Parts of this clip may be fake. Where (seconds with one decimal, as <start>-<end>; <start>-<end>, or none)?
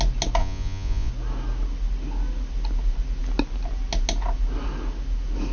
0.4-1.1